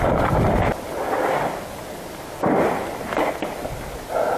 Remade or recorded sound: recorded